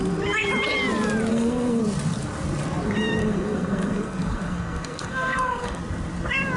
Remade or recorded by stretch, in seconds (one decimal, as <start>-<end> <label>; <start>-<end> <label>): 0.0-1.3 recorded; 1.3-1.8 remade; 1.8-3.2 recorded; 3.2-5.8 remade; 5.8-6.6 recorded